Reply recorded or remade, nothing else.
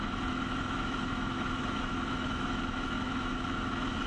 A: remade